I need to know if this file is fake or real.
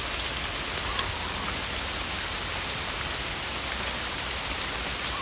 real